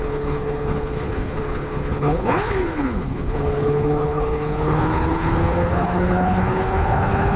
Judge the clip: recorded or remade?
remade